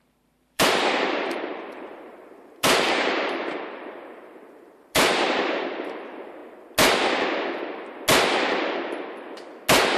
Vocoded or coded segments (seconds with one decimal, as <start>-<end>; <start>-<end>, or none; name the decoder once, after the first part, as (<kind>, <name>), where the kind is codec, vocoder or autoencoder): 0.0-6.4 (vocoder, BigVGAN v2)